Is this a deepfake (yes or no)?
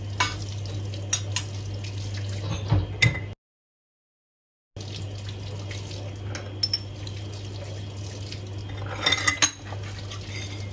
no